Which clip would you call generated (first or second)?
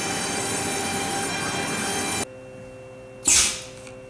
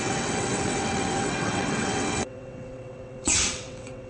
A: second